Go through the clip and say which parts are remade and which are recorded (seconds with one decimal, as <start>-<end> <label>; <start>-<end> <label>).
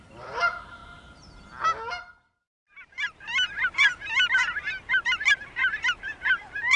0.0-0.8 remade; 0.8-4.9 recorded; 4.9-6.8 remade